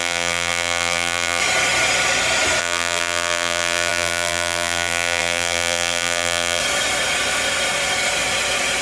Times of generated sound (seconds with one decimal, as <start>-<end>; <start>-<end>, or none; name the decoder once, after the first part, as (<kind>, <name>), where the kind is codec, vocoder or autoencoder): 0.0-1.4 (vocoder, BigVGAN v2); 2.6-6.6